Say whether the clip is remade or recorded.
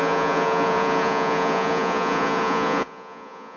remade